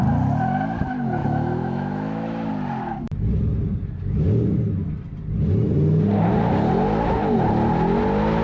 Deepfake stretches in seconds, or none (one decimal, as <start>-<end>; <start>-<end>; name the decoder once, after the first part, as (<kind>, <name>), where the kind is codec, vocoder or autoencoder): 1.2-2.5 (autoencoder, DAC-VAE)